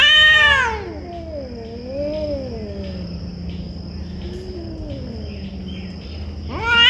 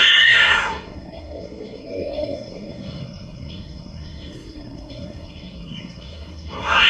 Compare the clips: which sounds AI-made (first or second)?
second